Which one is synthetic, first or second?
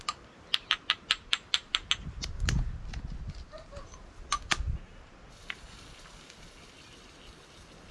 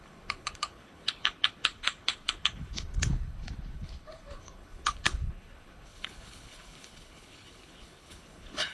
second